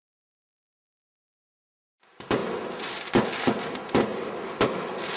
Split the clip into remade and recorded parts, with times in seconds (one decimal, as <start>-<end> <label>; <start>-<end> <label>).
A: 0.0-5.2 recorded